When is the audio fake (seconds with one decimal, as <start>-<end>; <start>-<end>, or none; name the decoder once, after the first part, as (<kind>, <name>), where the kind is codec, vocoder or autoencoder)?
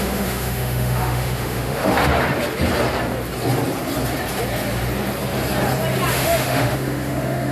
0.0-2.1 (autoencoder, DAC-VAE); 6.1-7.5